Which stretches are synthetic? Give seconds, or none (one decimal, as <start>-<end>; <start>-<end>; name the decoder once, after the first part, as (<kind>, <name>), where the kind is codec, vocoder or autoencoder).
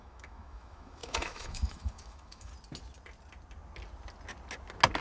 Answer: 0.0-2.5 (autoencoder, DAC-VAE)